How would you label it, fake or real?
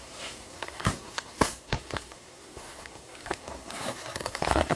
fake